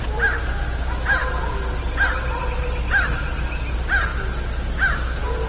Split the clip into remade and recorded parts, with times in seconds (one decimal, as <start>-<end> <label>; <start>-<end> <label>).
0.0-5.5 recorded